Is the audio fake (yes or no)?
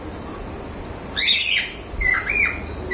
no